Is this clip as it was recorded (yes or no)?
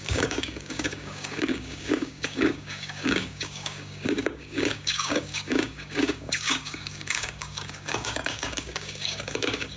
no